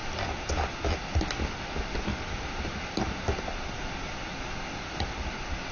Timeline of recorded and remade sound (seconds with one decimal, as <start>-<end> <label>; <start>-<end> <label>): 0.0-2.1 recorded; 2.1-3.4 remade; 3.4-5.7 recorded